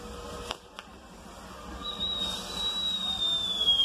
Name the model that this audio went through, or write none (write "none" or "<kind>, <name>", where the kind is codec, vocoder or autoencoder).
none